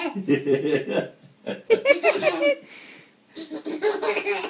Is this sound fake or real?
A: fake